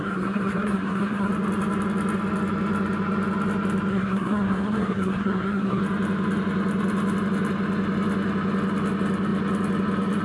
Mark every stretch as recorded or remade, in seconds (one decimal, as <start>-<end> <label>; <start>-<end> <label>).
0.0-1.3 remade; 1.3-3.9 recorded; 3.9-5.8 remade; 5.8-10.2 recorded